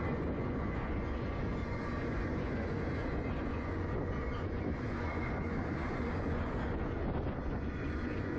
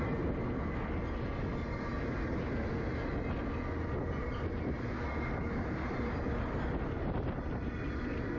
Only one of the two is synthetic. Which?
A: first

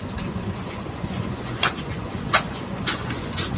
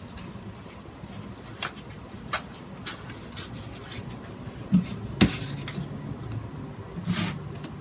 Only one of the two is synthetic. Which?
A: first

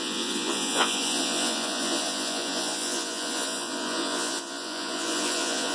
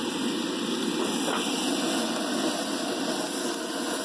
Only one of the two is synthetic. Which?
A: first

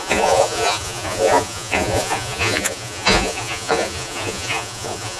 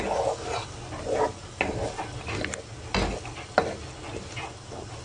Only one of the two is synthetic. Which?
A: first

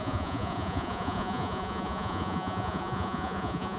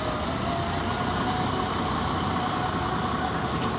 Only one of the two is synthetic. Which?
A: first